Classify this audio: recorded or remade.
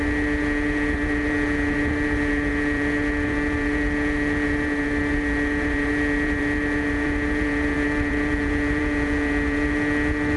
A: remade